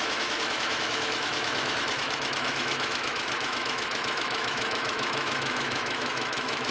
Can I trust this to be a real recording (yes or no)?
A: no